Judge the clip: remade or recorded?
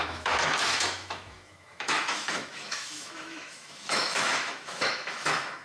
remade